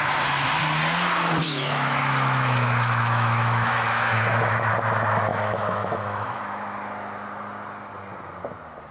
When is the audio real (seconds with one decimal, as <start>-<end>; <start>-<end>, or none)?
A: 0.0-1.4; 4.7-5.3; 6.4-8.9